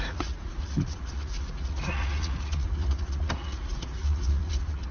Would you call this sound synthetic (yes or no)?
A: yes